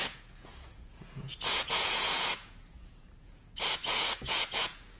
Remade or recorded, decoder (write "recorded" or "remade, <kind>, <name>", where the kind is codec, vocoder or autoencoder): remade, vocoder, Vocos